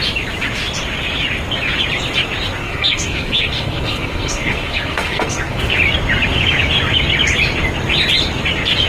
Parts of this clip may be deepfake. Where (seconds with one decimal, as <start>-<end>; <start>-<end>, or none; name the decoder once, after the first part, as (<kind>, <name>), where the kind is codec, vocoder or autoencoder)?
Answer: 2.6-5.6 (codec, SNAC)